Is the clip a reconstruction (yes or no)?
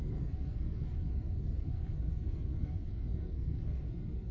yes